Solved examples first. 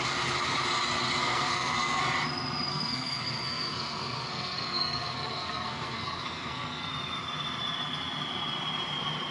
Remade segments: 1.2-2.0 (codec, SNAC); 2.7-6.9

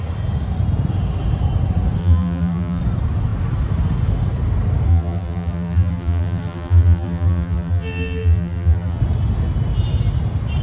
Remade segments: 2.0-2.8 (vocoder, BigVGAN v2); 4.9-9.0

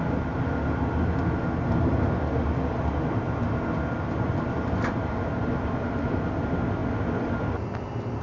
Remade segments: none